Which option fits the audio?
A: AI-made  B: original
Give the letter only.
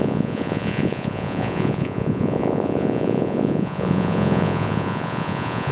A